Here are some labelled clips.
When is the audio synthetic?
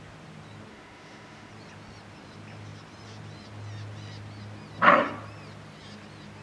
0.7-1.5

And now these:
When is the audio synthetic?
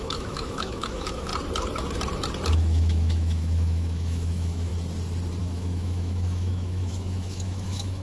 0.0-1.3; 2.5-4.7; 5.4-8.0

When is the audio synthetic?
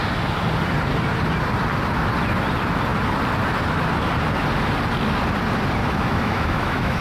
5.8-7.0